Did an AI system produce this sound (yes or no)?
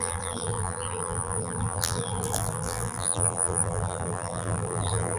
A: yes